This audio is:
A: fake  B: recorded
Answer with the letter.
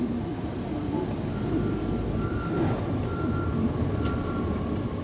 B